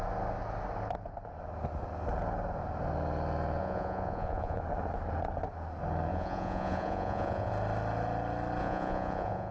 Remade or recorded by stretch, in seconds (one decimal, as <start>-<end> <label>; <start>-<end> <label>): 0.0-3.6 recorded; 3.6-4.6 remade; 4.6-6.1 recorded; 6.1-7.5 remade; 7.5-8.6 recorded; 8.6-9.5 remade